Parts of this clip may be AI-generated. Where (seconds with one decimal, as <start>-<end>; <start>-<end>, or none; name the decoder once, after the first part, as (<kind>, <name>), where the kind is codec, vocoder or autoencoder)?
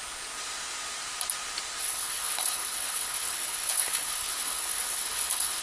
1.8-5.6 (codec, HILCodec)